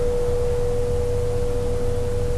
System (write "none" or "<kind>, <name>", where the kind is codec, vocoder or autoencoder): none